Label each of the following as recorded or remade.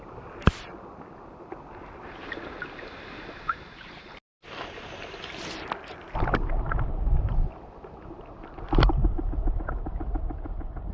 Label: recorded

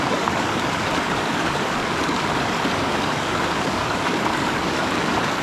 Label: remade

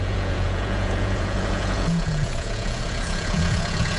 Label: remade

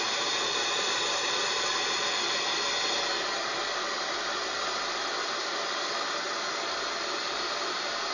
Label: recorded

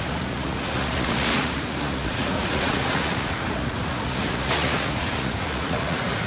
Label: remade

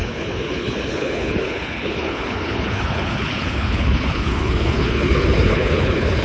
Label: remade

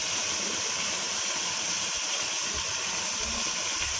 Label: recorded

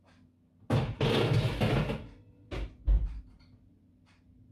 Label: recorded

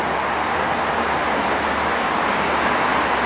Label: recorded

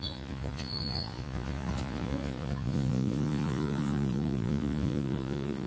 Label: remade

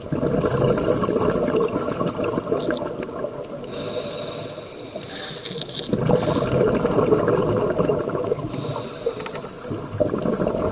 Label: recorded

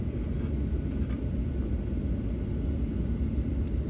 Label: recorded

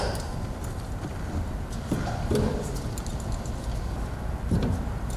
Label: recorded